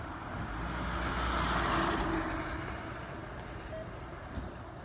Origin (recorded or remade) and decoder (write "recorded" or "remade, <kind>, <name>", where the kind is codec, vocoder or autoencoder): recorded